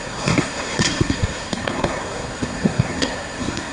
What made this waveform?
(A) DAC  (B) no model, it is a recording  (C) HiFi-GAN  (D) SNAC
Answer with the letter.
D